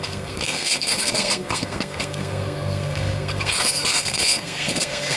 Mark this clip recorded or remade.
remade